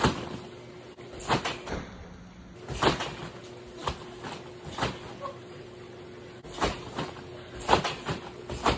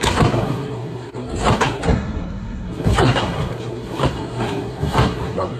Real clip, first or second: first